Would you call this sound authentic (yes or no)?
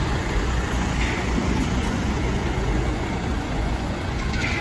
no